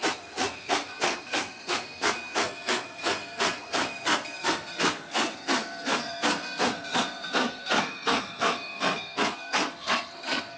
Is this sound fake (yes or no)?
yes